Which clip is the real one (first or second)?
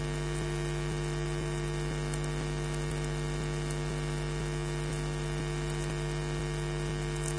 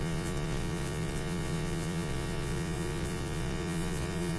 first